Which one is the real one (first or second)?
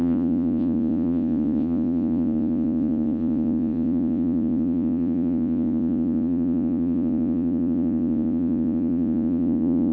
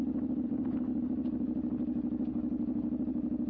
second